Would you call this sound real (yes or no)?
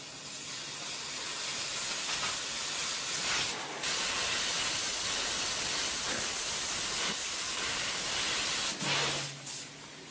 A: yes